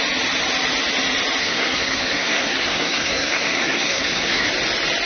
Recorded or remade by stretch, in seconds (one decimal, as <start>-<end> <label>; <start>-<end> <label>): 0.0-1.4 recorded; 1.4-4.5 remade; 4.5-5.1 recorded